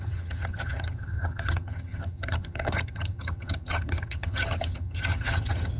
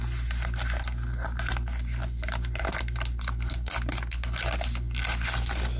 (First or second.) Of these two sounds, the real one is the second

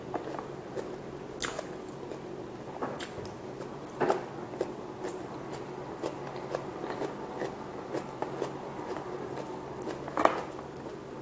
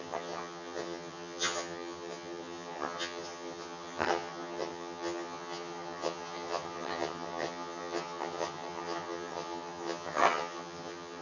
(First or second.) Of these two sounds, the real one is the first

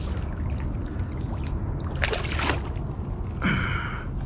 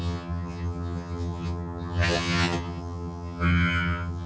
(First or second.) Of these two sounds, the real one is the first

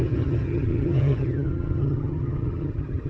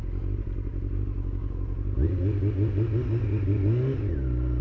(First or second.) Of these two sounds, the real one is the second